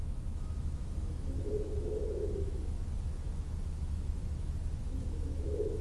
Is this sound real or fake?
fake